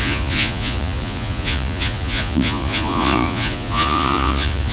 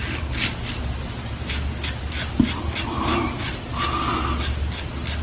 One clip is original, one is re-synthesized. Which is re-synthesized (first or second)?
first